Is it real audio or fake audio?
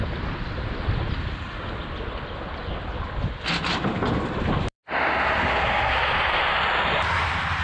real